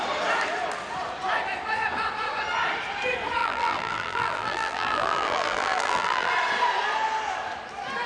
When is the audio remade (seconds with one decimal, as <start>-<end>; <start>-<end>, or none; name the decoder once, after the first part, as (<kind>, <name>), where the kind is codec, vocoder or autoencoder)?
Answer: 3.4-6.3 (vocoder, BigVGAN v2)